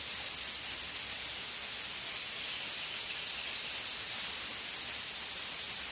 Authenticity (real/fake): real